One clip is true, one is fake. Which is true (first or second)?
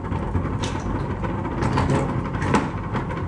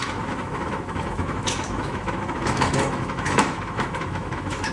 first